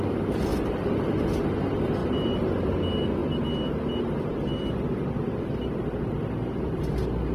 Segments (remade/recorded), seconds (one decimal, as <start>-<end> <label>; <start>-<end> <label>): 0.0-0.5 recorded; 0.5-1.1 remade; 1.1-2.0 recorded; 2.0-2.5 remade; 2.5-7.3 recorded